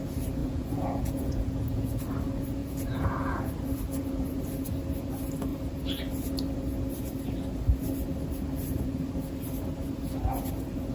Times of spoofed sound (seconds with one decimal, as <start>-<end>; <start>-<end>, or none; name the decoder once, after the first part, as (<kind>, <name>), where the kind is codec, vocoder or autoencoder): 0.4-2.1 (vocoder, Vocos); 2.6-3.4